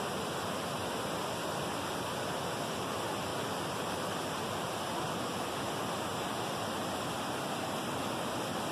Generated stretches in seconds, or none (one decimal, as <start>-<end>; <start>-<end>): none